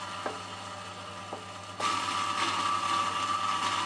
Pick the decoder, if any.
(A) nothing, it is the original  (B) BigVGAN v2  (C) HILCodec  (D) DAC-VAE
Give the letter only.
A